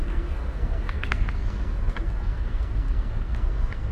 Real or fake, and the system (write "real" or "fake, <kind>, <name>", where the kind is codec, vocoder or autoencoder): fake, codec, SNAC